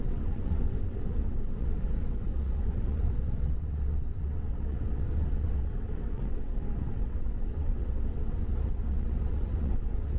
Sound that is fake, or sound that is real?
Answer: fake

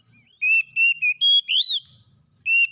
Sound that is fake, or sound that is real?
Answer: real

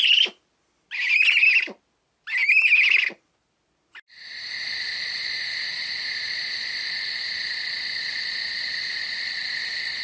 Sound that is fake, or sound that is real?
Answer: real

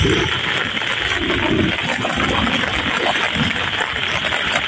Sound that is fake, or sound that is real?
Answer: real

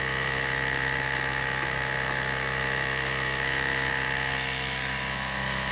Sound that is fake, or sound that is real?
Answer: fake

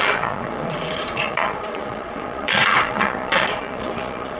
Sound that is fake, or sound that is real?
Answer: fake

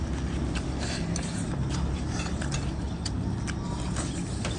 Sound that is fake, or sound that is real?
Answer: real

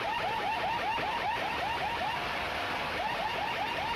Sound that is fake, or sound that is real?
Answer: fake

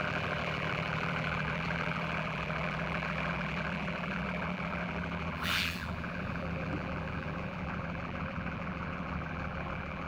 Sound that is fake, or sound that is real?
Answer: fake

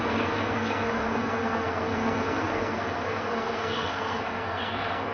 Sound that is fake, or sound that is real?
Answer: fake